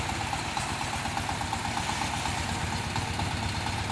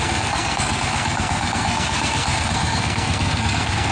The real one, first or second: first